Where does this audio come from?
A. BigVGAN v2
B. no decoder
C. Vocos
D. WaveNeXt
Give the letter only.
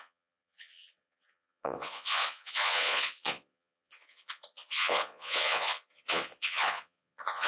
C